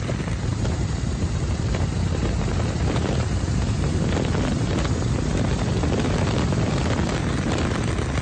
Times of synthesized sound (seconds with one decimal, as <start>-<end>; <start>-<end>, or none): 0.5-4.0